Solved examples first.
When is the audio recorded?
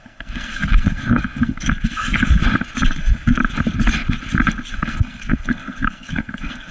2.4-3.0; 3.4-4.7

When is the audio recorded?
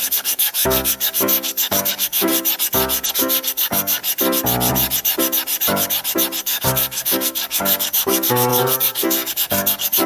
2.3-3.1; 4.0-6.4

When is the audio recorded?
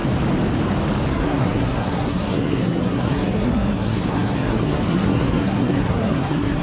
0.0-1.1